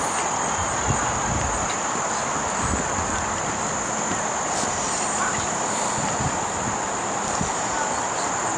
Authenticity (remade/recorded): recorded